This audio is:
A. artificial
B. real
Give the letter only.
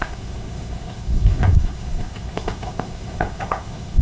A